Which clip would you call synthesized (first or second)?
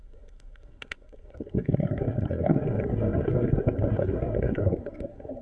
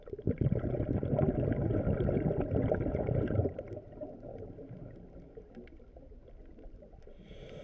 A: first